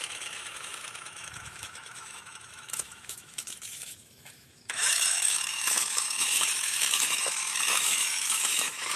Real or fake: fake